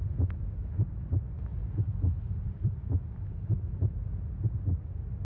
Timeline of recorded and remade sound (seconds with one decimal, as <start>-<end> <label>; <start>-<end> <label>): 0.0-5.2 recorded